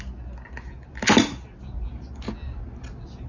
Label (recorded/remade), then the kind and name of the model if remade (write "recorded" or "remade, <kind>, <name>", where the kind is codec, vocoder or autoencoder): recorded